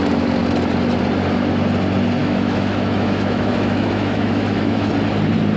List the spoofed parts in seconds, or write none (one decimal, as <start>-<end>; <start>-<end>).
2.2-4.9